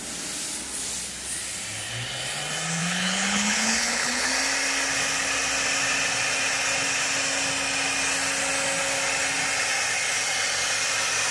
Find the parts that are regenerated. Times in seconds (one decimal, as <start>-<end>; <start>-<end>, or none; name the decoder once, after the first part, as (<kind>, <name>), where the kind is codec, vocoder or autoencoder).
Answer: 2.8-4.3 (codec, HILCodec)